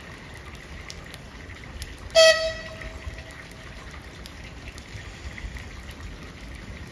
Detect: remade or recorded recorded